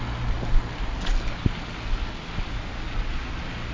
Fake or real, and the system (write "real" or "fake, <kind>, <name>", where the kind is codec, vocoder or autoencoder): real